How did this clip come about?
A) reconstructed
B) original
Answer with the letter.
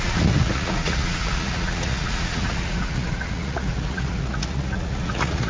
A